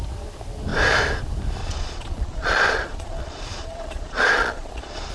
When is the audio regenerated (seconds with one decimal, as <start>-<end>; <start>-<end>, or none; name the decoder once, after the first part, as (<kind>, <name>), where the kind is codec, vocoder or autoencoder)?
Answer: 1.6-5.1 (vocoder, Vocos)